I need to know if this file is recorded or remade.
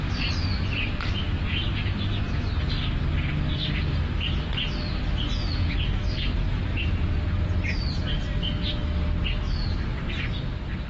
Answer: recorded